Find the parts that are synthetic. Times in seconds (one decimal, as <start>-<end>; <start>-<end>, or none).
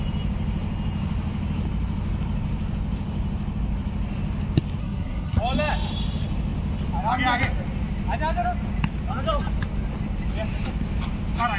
4.8-5.4